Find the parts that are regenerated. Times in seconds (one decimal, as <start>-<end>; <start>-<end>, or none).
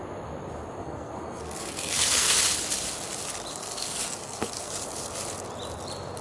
0.8-2.4; 3.6-4.7